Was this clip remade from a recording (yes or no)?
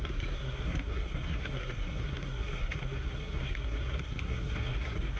yes